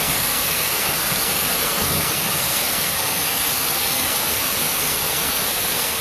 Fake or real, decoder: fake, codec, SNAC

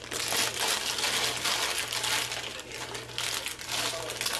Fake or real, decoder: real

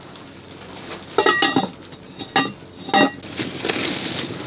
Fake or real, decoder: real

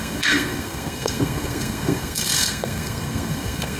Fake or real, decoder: fake, codec, SNAC